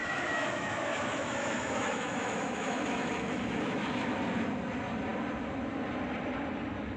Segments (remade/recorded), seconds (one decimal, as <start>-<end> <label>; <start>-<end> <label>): 0.0-4.2 remade; 4.2-7.0 recorded